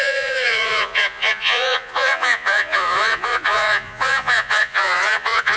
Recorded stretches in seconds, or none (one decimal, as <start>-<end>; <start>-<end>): none